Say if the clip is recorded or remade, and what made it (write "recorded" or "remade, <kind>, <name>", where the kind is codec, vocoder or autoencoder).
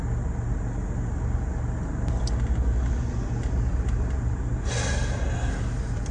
recorded